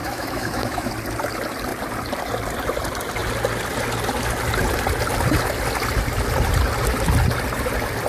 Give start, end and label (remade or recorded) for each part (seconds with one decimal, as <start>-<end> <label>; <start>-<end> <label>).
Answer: 0.0-0.9 remade; 0.9-8.1 recorded